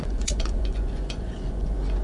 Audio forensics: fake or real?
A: fake